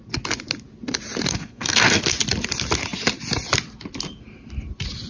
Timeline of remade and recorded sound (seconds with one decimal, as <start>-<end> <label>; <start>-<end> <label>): 0.0-1.3 recorded; 1.3-2.0 remade; 2.0-5.1 recorded